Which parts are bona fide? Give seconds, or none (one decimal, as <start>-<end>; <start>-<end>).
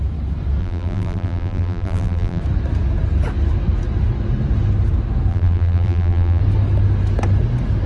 0.0-0.6; 2.4-5.3; 6.4-7.9